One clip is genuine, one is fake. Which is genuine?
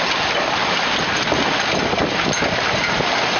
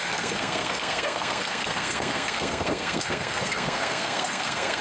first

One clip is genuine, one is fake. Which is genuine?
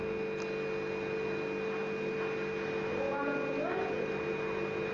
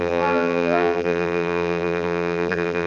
first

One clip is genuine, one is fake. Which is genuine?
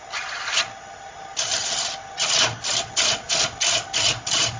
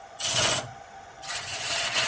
first